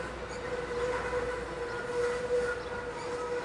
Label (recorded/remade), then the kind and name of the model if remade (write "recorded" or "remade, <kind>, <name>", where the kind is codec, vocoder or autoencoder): recorded